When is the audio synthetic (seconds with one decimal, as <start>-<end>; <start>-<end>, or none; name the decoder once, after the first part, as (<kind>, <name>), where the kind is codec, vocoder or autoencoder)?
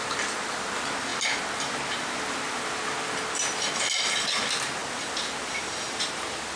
none